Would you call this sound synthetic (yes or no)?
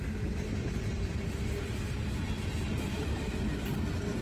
no